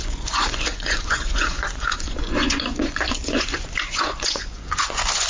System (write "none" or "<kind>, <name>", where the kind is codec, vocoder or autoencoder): vocoder, Vocos